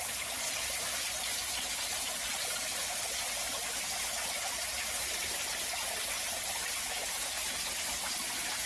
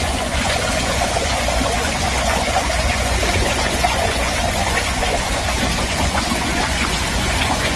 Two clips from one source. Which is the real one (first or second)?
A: first